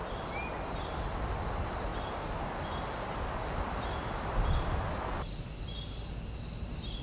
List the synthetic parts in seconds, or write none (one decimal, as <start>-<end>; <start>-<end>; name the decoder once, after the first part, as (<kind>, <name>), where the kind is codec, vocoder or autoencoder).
none